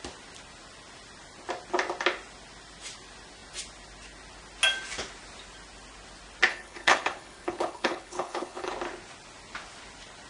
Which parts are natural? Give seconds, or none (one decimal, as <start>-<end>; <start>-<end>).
0.0-6.5; 8.7-10.3